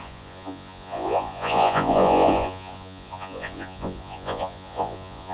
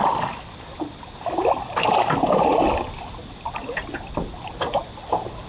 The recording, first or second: second